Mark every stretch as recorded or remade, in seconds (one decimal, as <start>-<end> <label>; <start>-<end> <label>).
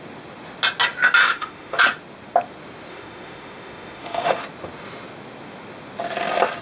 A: 0.0-1.2 recorded; 1.2-1.8 remade; 1.8-2.9 recorded; 2.9-4.4 remade; 4.4-6.6 recorded